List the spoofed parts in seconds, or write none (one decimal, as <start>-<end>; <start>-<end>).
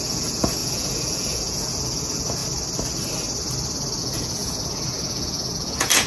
0.0-2.4; 4.0-6.1